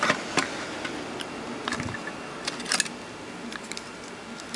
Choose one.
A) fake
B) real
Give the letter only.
B